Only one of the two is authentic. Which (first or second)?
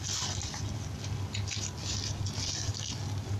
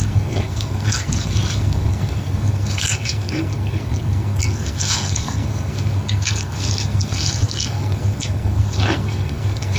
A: first